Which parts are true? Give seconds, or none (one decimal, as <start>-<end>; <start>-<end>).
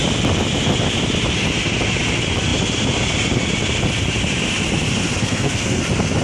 0.0-5.2; 5.8-6.2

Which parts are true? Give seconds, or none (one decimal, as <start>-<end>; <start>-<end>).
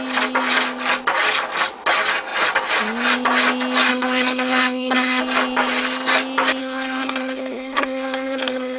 0.0-3.9; 5.2-6.6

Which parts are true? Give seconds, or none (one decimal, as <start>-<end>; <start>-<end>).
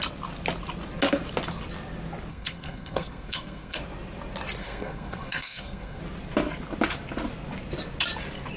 0.0-2.3; 3.8-4.6; 6.0-8.6